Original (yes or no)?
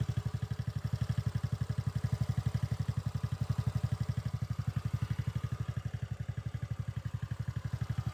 yes